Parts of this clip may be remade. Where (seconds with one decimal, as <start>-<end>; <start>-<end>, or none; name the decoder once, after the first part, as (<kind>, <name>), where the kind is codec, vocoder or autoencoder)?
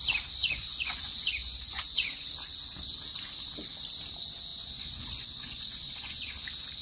0.4-2.3 (vocoder, Vocos); 4.5-6.3